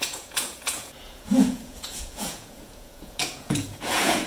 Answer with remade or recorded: remade